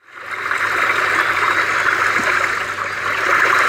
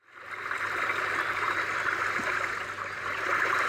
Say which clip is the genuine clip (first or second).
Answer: first